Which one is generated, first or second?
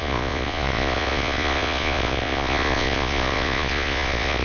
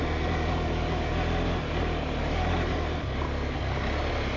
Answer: first